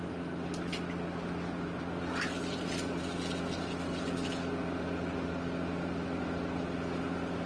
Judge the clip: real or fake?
real